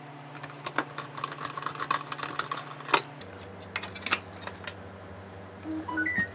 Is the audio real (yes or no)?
yes